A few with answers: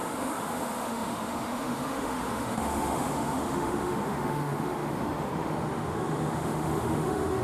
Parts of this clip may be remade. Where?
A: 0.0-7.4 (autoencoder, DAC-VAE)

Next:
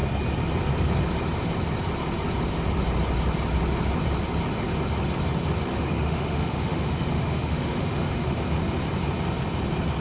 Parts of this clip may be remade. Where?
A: 5.7-8.4 (autoencoder, DAC-VAE)

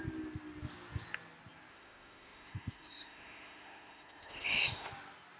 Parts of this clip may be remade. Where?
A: 1.7-4.9 (autoencoder, DAC-VAE)

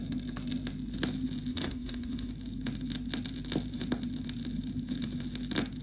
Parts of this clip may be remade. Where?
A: 1.5-2.3 (autoencoder, DAC-VAE)

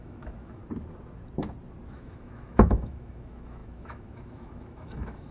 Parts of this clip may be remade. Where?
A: 0.0-0.6 (autoencoder, DAC-VAE); 1.9-5.3

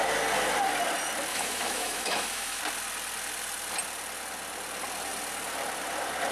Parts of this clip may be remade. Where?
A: 1.3-2.6 (autoencoder, DAC-VAE)

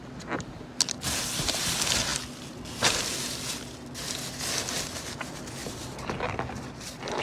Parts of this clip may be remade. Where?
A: none

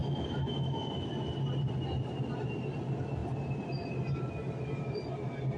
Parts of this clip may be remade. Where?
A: 0.0-1.1 (autoencoder, DAC-VAE)